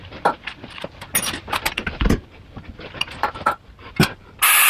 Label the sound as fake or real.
real